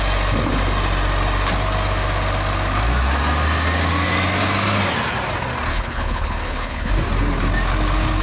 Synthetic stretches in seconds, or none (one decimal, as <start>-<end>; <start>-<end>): 5.7-6.9